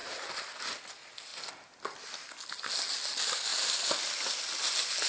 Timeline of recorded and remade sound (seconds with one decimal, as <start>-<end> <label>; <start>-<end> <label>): 0.0-5.1 recorded